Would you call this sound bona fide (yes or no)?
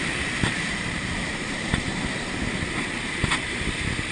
no